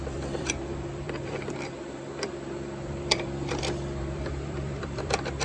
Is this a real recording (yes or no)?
no